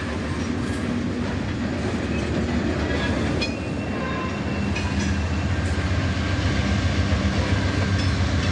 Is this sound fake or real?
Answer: real